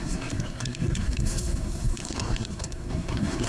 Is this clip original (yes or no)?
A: no